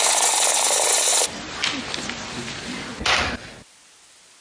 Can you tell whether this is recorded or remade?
recorded